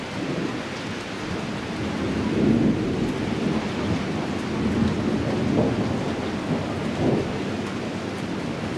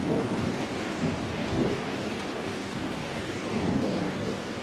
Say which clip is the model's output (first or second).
second